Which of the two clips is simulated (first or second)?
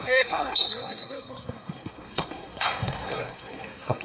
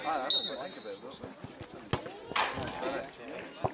first